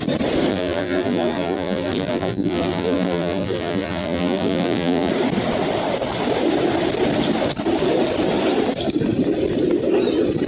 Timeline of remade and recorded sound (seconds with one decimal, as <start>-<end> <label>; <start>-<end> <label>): 0.0-0.5 recorded; 0.5-5.1 remade; 5.1-10.5 recorded